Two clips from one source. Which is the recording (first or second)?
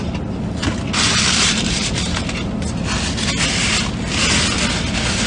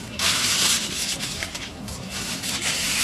first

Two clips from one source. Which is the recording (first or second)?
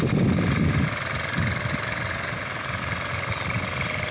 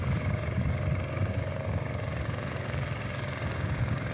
first